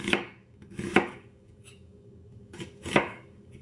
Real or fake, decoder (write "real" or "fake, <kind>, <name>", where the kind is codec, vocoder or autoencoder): fake, codec, DAC